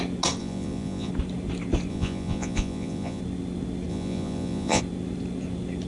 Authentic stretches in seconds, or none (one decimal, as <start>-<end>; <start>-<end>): 0.0-0.4; 1.1-1.9; 3.2-3.9; 4.8-5.9